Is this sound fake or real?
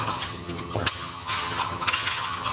fake